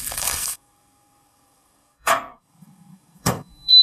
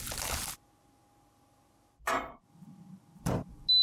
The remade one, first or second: first